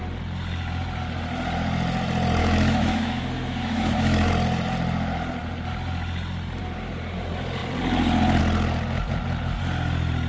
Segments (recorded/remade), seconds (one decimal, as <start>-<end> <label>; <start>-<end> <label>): 0.0-2.4 recorded; 2.4-4.3 remade; 4.3-10.3 recorded